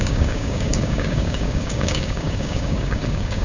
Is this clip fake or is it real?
fake